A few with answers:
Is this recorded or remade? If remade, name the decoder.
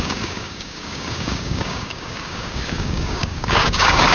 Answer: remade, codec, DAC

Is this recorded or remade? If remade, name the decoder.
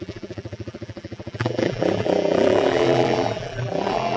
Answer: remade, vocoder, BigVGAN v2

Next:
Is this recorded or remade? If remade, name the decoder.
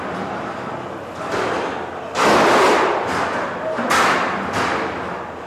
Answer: recorded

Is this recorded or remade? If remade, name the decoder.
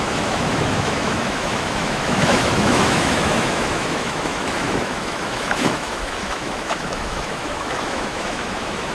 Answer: remade, autoencoder, DAC-VAE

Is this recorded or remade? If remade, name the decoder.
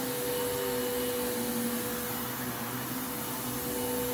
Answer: recorded